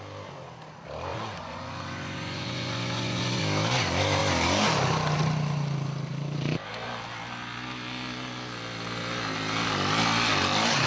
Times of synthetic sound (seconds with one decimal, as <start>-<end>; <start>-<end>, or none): 1.1-3.4